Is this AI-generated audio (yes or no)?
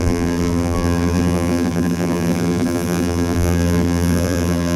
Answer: yes